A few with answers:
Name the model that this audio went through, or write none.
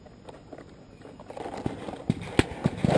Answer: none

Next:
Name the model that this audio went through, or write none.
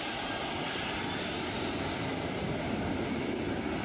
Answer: vocoder, BigVGAN v2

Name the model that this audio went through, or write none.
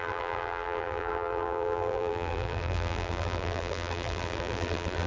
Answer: vocoder, BigVGAN v2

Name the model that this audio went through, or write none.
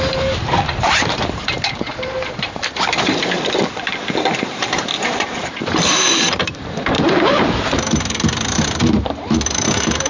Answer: vocoder, BigVGAN v2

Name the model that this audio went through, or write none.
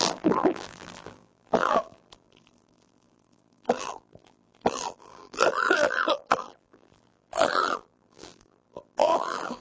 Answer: vocoder, BigVGAN v2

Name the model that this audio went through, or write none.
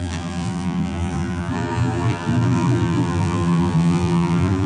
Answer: vocoder, BigVGAN v2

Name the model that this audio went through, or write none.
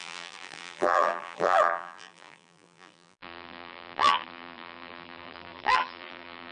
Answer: vocoder, BigVGAN v2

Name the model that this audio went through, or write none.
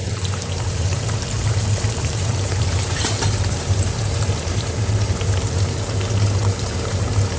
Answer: vocoder, BigVGAN v2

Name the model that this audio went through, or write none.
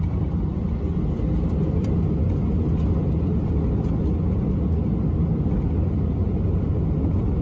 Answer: none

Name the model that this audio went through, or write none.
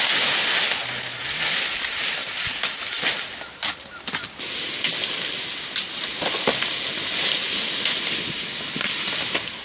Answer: none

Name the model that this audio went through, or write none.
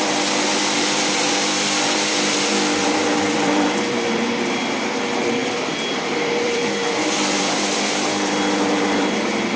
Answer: vocoder, BigVGAN v2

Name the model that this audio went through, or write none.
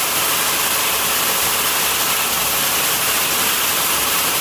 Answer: none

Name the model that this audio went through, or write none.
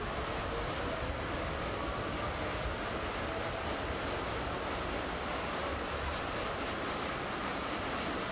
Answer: none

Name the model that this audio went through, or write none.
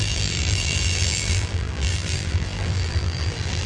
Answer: vocoder, BigVGAN v2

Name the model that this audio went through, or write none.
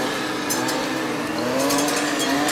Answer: vocoder, BigVGAN v2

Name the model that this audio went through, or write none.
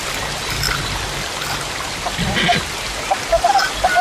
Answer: vocoder, BigVGAN v2